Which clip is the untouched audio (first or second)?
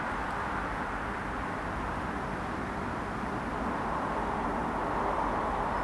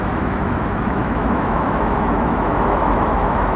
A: first